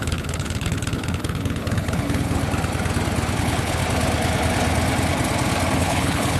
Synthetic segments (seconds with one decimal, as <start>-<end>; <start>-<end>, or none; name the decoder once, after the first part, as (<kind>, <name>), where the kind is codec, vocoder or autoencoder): 0.0-2.4 (codec, HILCodec); 3.4-3.8; 5.8-6.4